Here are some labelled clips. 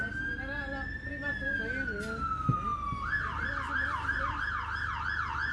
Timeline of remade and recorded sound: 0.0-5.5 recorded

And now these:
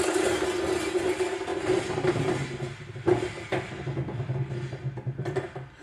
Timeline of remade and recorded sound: 0.0-1.5 remade; 1.5-2.1 recorded; 2.1-5.8 remade

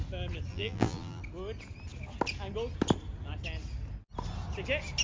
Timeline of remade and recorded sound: 0.0-0.5 recorded; 0.5-1.2 remade; 1.2-5.0 recorded

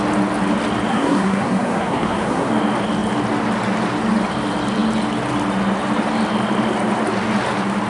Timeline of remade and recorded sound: 0.0-0.9 recorded; 0.9-2.5 remade; 2.5-7.9 recorded